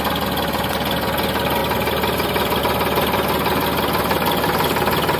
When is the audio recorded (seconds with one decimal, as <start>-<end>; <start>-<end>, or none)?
0.0-1.6; 2.6-5.2

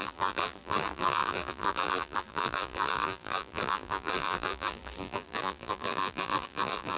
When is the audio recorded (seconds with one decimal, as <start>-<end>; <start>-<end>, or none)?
none

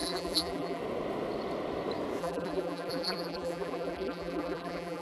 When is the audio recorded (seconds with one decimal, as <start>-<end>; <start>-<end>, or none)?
0.8-2.2

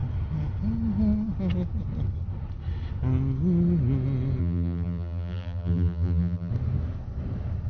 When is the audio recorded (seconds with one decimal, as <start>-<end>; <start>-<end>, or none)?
0.0-4.4; 6.5-7.7